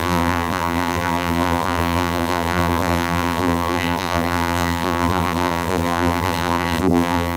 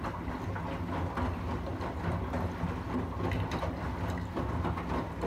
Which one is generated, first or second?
first